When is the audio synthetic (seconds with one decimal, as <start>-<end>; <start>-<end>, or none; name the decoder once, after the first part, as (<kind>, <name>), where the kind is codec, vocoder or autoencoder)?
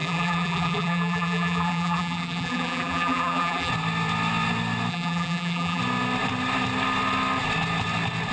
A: 0.0-3.7 (vocoder, BigVGAN v2); 4.9-5.8